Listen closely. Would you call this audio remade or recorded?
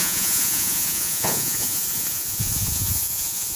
remade